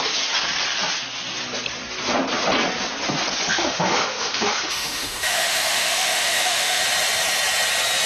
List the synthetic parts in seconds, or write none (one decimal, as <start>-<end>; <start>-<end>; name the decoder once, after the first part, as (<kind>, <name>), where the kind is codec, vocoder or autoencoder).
3.5-6.8 (autoencoder, DAC-VAE)